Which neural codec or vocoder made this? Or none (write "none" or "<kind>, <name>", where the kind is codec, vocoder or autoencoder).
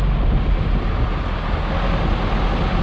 none